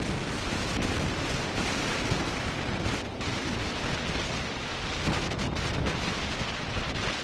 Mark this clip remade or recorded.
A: recorded